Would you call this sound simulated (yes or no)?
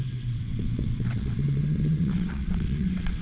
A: yes